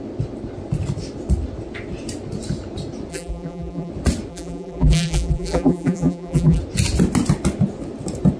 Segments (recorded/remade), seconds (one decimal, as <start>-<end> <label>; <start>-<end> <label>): 0.0-3.1 recorded; 3.1-3.9 remade; 3.9-4.3 recorded; 4.3-6.6 remade; 6.6-8.4 recorded